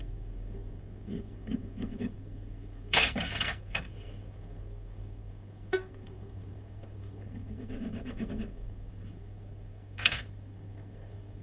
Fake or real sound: fake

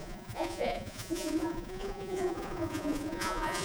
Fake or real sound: fake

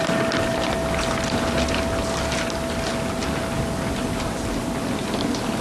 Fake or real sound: real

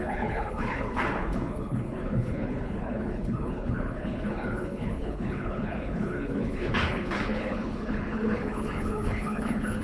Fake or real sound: fake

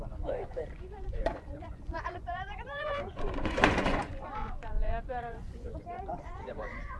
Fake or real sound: fake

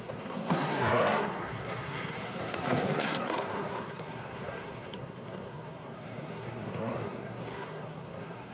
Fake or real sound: fake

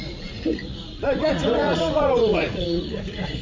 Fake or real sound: fake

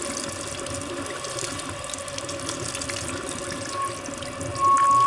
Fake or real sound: real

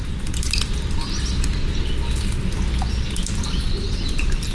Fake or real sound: real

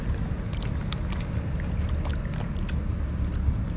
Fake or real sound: real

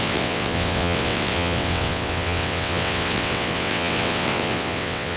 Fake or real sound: fake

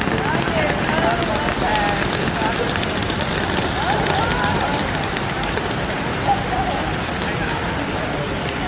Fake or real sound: real